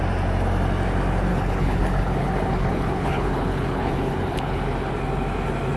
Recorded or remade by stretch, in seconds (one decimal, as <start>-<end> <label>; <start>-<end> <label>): 0.0-1.3 recorded; 1.3-4.6 remade; 4.6-5.8 recorded